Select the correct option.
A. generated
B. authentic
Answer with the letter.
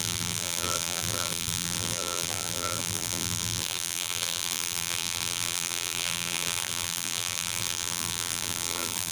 A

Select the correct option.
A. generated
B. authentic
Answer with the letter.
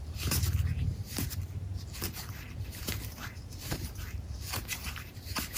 A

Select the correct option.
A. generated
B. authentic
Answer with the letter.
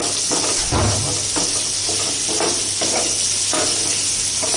B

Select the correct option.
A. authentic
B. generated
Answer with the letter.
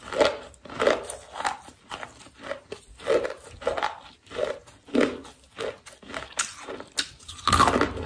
A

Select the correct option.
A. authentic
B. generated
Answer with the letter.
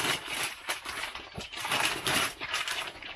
B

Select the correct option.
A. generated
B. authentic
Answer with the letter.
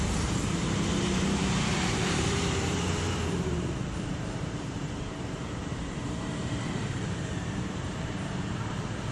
A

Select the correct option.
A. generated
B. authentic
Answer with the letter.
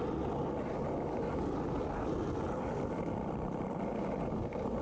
B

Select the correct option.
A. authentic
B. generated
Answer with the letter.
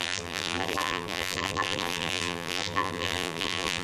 B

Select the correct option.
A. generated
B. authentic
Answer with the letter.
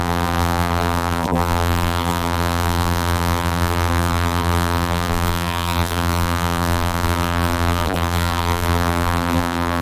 A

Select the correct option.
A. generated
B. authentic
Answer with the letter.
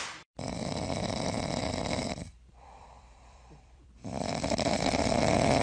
A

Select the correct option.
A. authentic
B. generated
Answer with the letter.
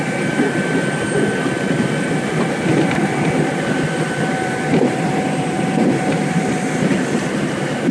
B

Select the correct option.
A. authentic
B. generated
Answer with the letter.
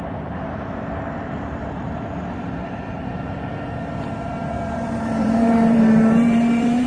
B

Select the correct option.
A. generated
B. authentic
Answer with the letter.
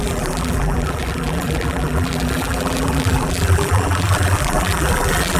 A